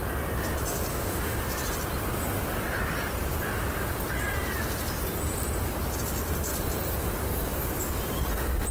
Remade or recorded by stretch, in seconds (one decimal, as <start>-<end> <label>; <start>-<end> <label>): 0.0-0.9 recorded; 0.9-1.4 remade; 1.4-8.7 recorded